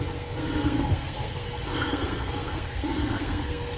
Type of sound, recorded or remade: remade